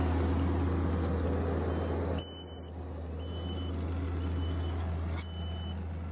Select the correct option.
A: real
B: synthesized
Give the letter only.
A